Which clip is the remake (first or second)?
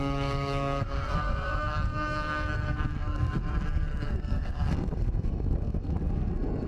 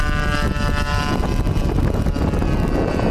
first